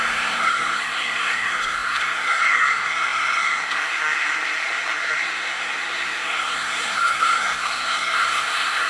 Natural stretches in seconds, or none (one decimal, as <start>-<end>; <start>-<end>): none